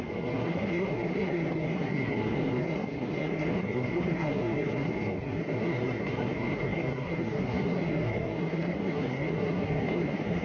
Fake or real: fake